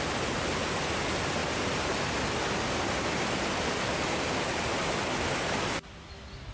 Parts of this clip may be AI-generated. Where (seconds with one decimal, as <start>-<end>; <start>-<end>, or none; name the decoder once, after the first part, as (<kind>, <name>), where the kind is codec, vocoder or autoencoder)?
none

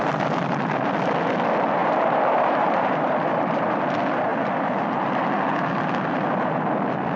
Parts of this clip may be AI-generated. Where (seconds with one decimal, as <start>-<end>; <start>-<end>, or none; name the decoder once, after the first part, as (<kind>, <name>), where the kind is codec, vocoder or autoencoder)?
1.8-3.8 (vocoder, BigVGAN v2)

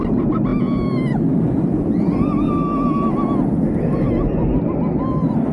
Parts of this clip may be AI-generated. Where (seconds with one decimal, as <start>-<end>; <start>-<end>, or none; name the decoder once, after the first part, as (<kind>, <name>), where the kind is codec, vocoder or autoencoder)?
none

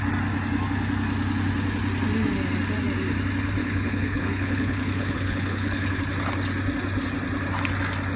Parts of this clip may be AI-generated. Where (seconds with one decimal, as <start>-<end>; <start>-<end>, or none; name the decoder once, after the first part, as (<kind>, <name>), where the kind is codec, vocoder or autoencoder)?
3.6-6.0 (codec, HILCodec)

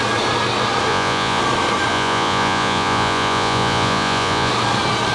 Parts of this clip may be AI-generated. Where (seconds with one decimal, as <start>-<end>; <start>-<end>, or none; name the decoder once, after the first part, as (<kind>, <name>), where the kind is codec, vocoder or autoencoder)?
0.9-1.4 (vocoder, Vocos); 1.9-4.5

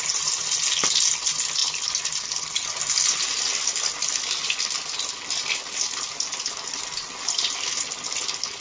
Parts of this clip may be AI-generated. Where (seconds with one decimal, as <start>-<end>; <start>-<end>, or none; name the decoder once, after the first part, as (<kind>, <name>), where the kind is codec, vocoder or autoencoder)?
none